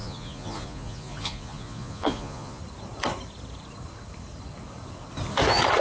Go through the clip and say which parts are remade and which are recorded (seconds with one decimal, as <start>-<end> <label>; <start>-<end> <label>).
0.0-2.6 remade; 2.6-5.8 recorded